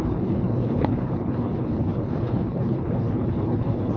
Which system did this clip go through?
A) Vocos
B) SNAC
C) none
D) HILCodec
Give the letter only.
D